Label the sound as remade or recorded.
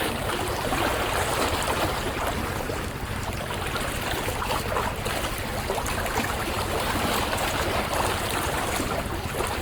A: recorded